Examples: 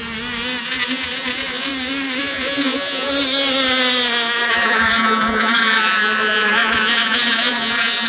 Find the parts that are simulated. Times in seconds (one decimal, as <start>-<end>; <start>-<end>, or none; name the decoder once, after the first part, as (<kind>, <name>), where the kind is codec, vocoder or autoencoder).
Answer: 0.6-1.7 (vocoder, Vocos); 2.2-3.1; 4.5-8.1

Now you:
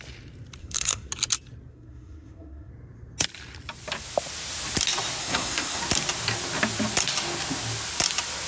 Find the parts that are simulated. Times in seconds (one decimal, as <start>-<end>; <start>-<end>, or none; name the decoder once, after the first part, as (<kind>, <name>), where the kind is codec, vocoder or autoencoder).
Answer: 0.6-1.1 (codec, SNAC); 1.7-2.7; 5.2-5.8

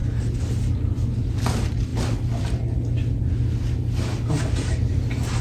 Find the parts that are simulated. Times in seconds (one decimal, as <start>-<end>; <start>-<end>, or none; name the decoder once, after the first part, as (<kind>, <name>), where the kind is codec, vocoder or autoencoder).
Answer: none

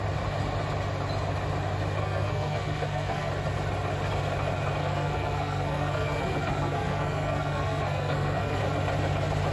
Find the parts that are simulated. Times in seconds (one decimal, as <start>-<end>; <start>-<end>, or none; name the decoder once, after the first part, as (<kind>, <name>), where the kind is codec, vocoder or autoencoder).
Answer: 2.0-3.3 (codec, SNAC); 4.8-8.6